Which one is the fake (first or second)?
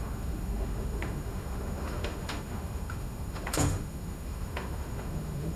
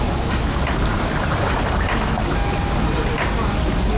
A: first